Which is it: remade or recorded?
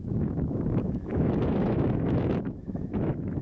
remade